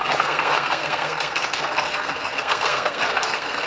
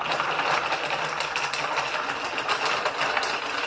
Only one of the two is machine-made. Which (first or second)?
first